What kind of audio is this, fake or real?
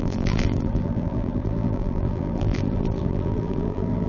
fake